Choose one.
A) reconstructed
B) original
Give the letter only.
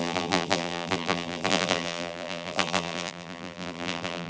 A